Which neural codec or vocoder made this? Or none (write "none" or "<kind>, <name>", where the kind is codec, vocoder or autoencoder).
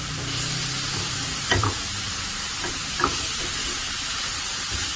none